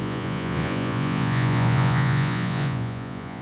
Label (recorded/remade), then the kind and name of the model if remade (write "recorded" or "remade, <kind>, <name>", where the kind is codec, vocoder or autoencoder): remade, vocoder, Vocos